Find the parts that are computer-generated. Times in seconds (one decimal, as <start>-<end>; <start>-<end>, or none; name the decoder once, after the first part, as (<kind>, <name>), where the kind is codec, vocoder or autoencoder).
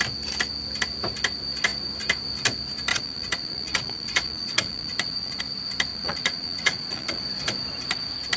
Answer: 2.9-5.4 (vocoder, Vocos); 5.9-7.2